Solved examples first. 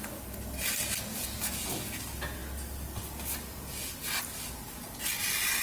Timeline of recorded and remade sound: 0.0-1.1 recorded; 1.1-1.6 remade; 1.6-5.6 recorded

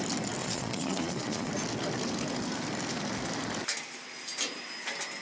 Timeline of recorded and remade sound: 0.0-0.4 recorded; 0.4-1.5 remade; 1.5-5.2 recorded

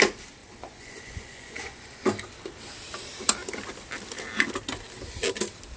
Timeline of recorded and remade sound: 0.0-0.4 recorded; 0.4-2.0 remade; 2.0-5.8 recorded

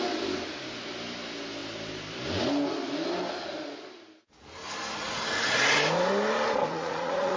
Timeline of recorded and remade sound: 0.0-6.7 recorded; 6.7-7.4 remade

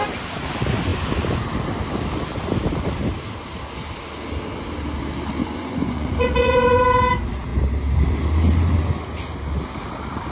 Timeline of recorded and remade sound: 0.0-5.4 recorded; 5.4-6.8 remade; 6.8-10.3 recorded

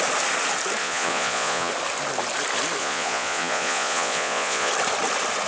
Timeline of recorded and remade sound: 0.0-0.8 recorded; 0.8-1.7 remade; 1.7-2.8 recorded; 2.8-4.7 remade; 4.7-5.5 recorded